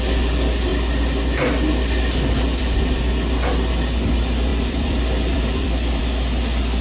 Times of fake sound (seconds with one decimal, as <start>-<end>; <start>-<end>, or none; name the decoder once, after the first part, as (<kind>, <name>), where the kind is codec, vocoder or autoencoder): 4.5-6.0 (vocoder, BigVGAN v2)